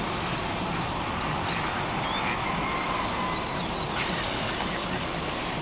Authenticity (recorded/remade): remade